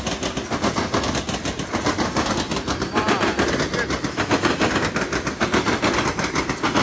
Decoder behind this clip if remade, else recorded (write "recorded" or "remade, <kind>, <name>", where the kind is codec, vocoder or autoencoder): recorded